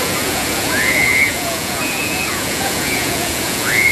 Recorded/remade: remade